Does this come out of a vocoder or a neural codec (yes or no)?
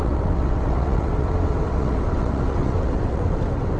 yes